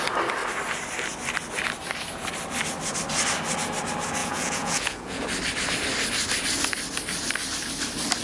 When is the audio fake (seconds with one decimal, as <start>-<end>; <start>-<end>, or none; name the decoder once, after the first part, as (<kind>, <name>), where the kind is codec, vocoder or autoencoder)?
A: 4.2-5.2 (vocoder, Vocos)